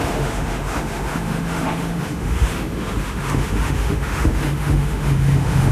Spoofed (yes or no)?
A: yes